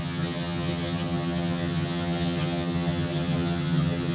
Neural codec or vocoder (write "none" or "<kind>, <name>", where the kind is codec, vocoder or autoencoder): vocoder, HiFi-GAN